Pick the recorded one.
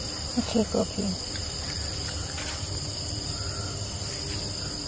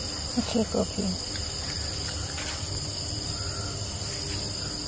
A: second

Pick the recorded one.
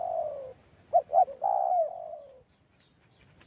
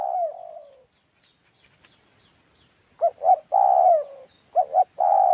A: second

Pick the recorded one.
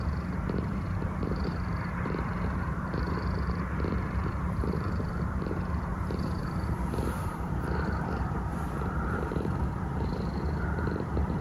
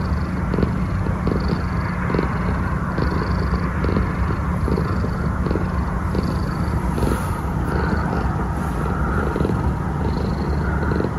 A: second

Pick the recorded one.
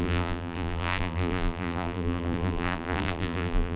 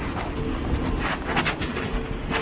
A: second